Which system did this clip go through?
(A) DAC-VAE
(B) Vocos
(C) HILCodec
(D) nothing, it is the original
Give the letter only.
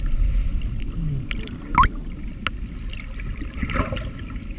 D